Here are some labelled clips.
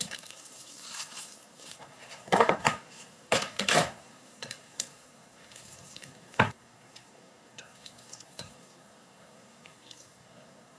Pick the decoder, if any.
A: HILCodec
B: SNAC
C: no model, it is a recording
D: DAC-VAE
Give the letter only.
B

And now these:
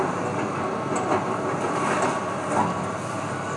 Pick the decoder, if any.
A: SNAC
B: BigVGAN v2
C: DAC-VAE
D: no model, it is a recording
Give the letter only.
D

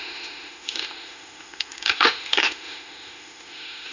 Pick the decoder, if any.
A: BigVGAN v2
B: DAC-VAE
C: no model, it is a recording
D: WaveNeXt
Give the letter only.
B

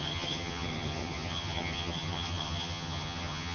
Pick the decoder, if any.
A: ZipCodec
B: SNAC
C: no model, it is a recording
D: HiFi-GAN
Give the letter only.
D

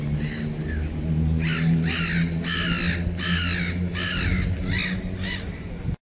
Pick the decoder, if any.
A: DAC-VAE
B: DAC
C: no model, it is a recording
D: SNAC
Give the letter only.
C